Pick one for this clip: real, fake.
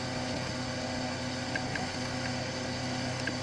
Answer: real